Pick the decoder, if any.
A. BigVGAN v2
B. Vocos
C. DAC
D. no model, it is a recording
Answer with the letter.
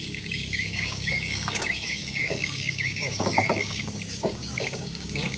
C